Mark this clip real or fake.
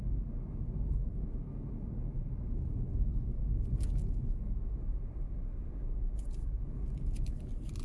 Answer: real